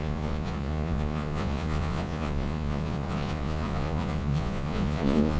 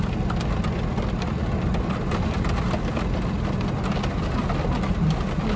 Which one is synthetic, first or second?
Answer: first